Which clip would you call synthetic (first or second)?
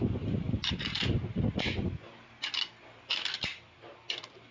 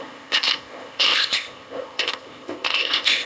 second